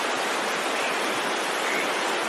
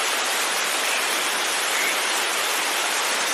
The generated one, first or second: second